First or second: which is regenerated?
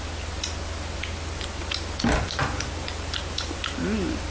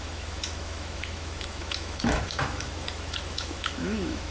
second